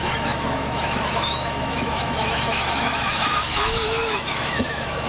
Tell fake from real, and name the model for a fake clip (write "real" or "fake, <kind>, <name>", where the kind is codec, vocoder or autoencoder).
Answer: fake, autoencoder, DAC-VAE